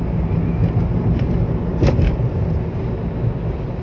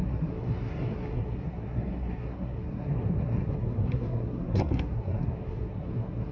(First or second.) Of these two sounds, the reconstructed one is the second